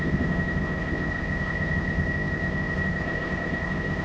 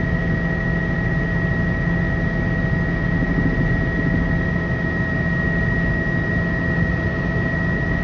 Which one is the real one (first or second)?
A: second